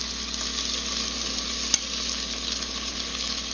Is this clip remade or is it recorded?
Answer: recorded